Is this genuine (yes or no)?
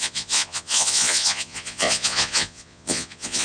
no